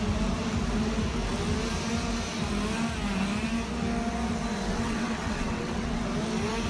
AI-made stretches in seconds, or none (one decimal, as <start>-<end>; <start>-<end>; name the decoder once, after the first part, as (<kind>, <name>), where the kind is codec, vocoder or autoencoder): 4.7-6.0 (vocoder, WaveNeXt)